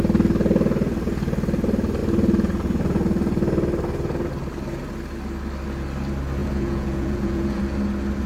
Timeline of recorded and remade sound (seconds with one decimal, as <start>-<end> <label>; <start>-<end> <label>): 0.0-6.4 recorded; 6.4-7.6 remade; 7.6-8.3 recorded